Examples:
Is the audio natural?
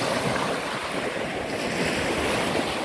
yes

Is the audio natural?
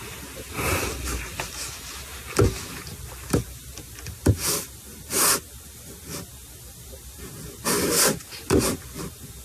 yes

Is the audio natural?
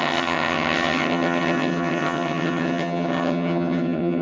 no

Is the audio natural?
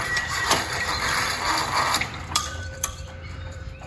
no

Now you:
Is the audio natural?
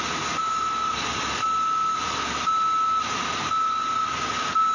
yes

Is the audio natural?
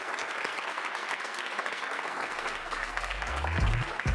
no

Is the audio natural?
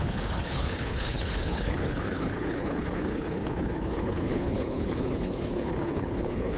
no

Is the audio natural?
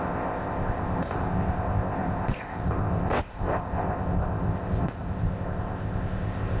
no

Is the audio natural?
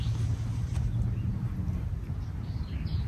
yes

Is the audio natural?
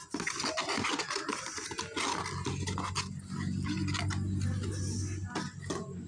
yes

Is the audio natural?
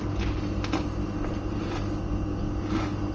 yes